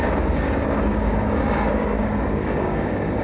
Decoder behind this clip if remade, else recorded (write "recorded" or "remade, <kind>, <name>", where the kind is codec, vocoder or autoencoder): remade, codec, DAC